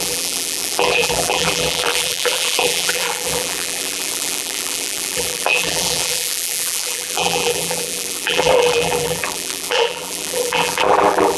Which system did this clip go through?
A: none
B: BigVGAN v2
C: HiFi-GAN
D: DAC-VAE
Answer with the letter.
B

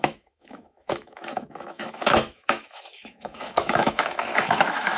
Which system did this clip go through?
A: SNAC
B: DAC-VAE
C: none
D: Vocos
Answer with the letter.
B